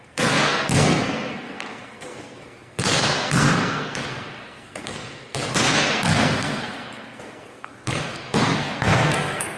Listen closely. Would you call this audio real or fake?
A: fake